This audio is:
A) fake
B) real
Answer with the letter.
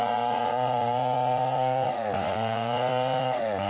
A